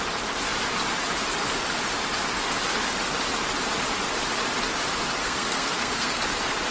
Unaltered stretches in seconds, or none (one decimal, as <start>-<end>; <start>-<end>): 0.0-5.2; 6.2-6.7